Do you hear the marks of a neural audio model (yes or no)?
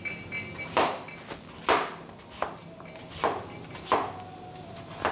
no